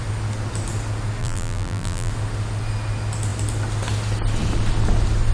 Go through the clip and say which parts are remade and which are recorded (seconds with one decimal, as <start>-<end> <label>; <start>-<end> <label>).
0.0-1.2 recorded; 1.2-2.1 remade; 2.1-5.3 recorded